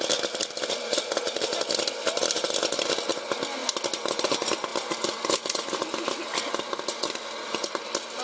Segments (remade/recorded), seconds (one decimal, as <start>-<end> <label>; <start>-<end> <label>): 0.0-3.6 recorded; 3.6-4.3 remade; 4.3-4.7 recorded; 4.7-7.2 remade; 7.2-8.2 recorded